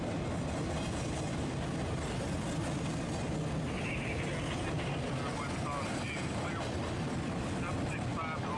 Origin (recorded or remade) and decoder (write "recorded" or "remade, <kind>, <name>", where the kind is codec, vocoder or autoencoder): recorded